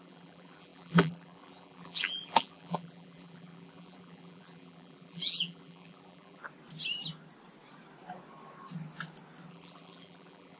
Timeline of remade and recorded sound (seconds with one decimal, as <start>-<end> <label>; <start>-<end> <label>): 0.0-6.4 remade; 6.4-9.5 recorded; 9.5-10.6 remade